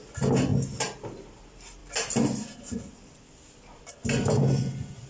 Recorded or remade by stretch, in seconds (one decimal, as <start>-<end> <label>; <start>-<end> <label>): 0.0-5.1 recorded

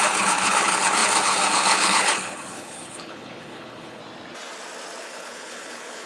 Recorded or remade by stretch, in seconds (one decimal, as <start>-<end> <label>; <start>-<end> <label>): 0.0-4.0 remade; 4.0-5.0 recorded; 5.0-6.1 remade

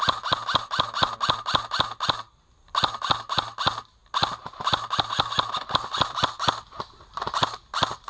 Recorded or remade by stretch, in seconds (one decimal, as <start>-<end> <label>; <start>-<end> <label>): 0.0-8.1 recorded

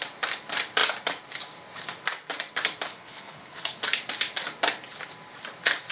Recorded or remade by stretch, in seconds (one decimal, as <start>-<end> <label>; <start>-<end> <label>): 0.0-2.9 recorded; 2.9-3.8 remade; 3.8-5.9 recorded

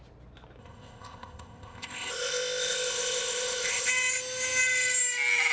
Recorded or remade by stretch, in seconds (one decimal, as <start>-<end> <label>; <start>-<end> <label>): 0.0-0.6 recorded; 0.6-3.9 remade; 3.9-5.5 recorded